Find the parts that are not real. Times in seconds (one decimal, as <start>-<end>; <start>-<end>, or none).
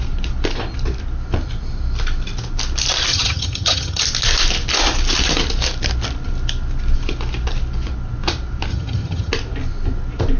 3.1-4.0; 8.7-9.3